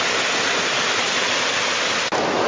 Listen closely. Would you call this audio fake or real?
real